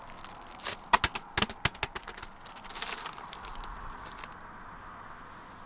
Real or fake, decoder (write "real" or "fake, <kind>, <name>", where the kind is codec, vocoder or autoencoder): real